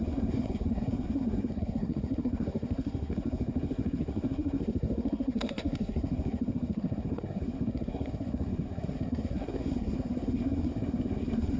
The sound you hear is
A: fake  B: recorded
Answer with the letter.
A